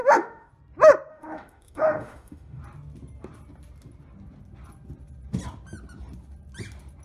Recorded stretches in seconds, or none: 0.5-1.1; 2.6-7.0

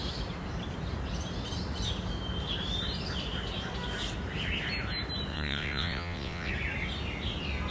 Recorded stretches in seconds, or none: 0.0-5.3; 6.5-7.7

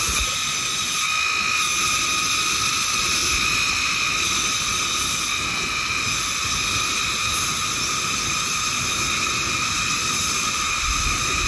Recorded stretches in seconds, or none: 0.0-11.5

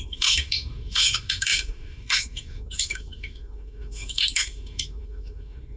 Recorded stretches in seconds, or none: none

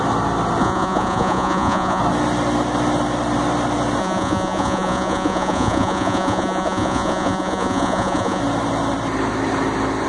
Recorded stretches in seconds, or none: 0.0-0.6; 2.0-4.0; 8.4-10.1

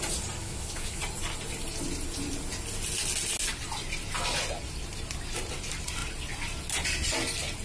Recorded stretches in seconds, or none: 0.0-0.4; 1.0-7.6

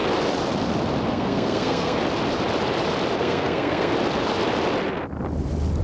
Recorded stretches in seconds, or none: 0.0-1.1; 2.0-3.2; 3.9-5.8

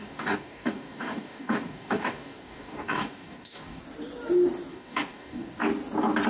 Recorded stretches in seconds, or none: 3.8-4.7; 5.6-6.3